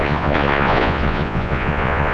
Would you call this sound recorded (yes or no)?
no